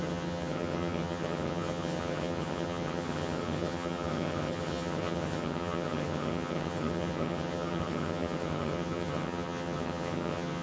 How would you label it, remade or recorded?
remade